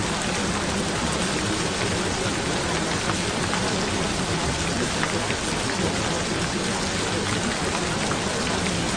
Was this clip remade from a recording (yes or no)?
no